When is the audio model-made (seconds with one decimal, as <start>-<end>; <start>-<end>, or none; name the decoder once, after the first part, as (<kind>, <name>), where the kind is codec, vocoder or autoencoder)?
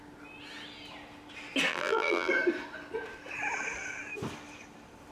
1.7-2.3 (vocoder, BigVGAN v2)